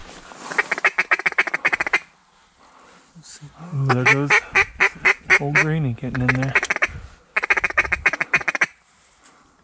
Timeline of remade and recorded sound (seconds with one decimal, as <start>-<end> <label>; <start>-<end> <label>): 0.0-9.6 recorded